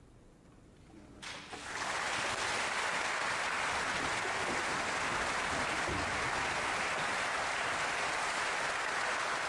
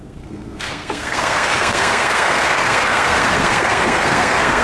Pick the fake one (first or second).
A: second